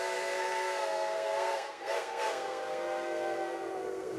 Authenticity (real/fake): fake